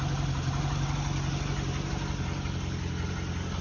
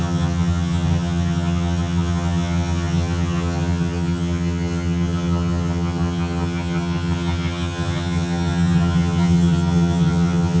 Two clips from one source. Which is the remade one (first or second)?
second